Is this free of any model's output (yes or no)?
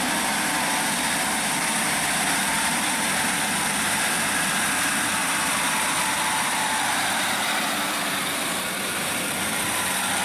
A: no